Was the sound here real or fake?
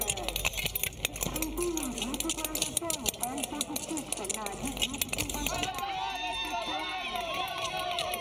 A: real